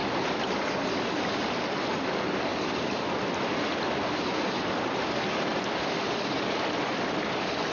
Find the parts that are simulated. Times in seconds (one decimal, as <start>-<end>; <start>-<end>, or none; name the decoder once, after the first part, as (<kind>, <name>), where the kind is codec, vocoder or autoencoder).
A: 0.0-2.1 (vocoder, BigVGAN v2); 2.5-4.2

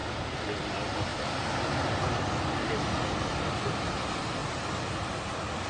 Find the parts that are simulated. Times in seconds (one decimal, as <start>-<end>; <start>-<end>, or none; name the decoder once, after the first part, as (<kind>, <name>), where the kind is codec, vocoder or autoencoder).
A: none